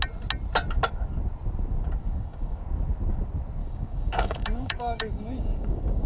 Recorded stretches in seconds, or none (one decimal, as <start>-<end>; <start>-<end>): 0.0-2.0; 2.6-3.6